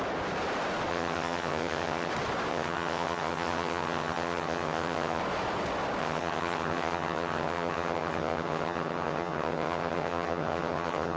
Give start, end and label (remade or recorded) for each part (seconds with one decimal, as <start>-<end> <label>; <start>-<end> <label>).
0.0-0.9 recorded; 0.9-2.1 remade; 2.1-2.5 recorded; 2.5-5.2 remade; 5.2-6.0 recorded; 6.0-11.2 remade